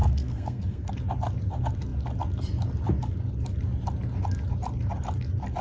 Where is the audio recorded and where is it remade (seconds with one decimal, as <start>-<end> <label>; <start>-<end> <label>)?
0.0-0.9 remade; 0.9-5.6 recorded

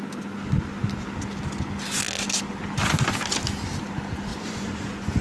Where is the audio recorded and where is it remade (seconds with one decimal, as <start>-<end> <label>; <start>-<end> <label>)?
0.0-4.3 recorded; 4.3-5.2 remade

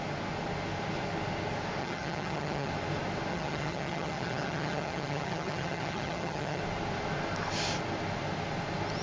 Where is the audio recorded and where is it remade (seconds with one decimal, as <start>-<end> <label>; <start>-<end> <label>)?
0.0-1.8 recorded; 1.8-2.7 remade; 2.7-3.3 recorded; 3.3-6.6 remade; 6.6-9.0 recorded